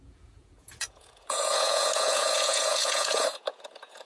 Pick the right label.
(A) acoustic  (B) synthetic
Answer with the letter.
B